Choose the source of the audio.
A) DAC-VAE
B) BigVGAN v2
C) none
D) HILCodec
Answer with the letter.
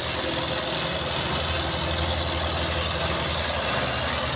C